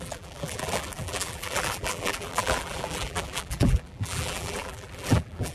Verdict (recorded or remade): remade